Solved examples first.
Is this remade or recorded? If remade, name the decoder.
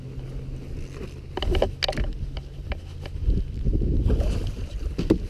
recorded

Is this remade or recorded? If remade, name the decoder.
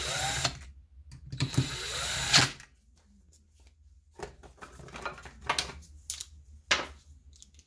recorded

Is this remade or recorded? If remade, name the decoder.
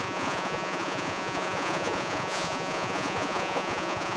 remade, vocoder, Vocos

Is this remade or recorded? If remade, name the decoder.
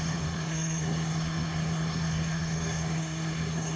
remade, codec, SNAC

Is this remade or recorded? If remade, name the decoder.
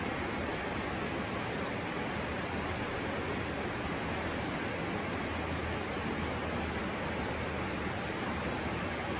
recorded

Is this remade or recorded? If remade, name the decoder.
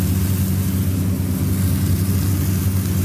recorded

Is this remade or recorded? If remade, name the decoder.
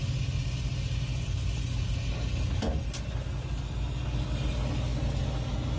recorded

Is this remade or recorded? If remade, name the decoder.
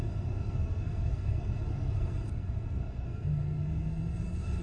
remade, codec, SNAC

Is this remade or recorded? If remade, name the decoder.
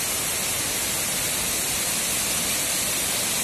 recorded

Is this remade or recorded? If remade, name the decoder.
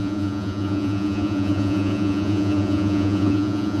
remade, vocoder, Vocos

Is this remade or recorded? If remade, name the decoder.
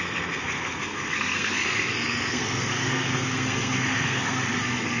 remade, codec, SNAC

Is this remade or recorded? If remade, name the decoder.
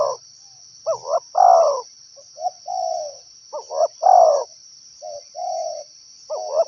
recorded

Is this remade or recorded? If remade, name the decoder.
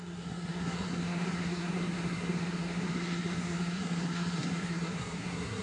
remade, codec, SNAC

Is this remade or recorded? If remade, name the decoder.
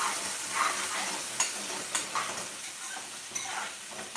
recorded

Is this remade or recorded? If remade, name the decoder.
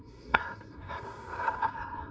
remade, codec, SNAC